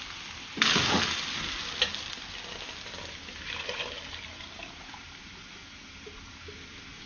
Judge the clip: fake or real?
real